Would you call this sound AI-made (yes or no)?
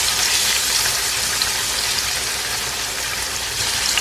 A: yes